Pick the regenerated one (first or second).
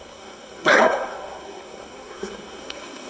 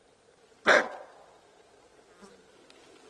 first